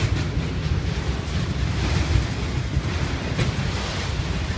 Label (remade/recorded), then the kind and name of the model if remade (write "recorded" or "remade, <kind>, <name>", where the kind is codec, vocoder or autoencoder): recorded